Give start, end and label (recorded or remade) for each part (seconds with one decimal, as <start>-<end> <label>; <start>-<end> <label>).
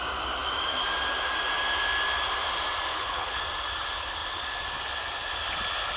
0.0-2.9 recorded; 2.9-3.4 remade; 3.4-6.0 recorded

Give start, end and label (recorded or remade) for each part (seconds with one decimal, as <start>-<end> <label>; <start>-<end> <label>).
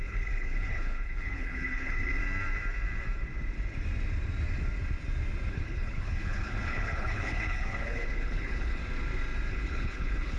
0.0-2.2 remade; 2.2-5.5 recorded; 5.5-8.8 remade; 8.8-9.5 recorded; 9.5-10.4 remade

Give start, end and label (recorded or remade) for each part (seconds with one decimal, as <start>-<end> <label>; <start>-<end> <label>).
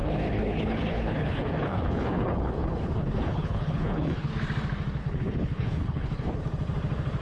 0.0-4.3 remade; 4.3-5.0 recorded; 5.0-6.4 remade; 6.4-7.2 recorded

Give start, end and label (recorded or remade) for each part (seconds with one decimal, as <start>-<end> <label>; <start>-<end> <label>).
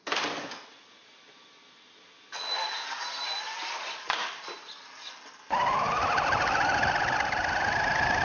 0.0-8.2 recorded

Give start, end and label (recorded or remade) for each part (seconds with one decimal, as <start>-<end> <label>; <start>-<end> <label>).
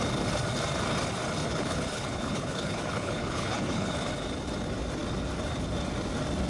0.0-1.4 recorded; 1.4-3.9 remade; 3.9-6.5 recorded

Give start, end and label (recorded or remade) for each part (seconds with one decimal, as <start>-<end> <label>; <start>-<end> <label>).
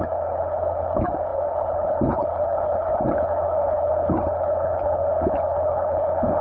0.0-6.4 remade